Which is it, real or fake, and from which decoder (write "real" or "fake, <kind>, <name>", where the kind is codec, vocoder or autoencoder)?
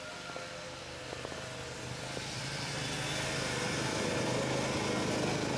real